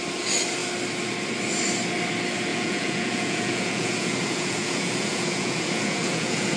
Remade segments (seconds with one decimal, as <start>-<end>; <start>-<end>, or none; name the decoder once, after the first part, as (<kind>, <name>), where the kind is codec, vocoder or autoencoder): 2.5-6.6 (vocoder, Vocos)